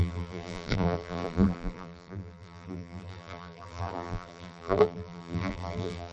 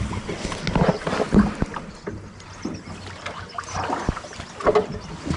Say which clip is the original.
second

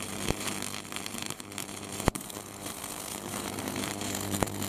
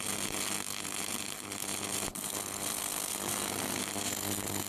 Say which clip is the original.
second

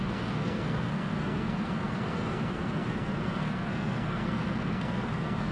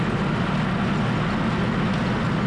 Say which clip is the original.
second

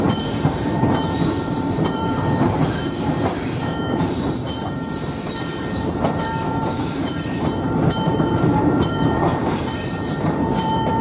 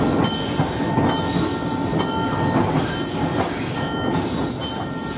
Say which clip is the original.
second